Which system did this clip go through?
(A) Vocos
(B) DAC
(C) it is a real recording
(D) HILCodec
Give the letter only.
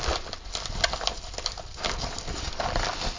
C